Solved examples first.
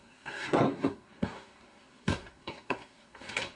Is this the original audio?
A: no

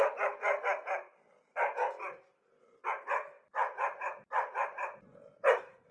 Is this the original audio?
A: yes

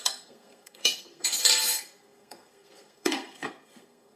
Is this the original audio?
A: no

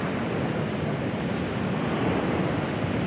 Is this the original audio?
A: yes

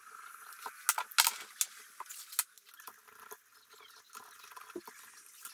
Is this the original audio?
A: yes